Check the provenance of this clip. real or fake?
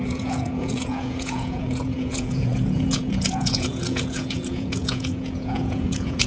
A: fake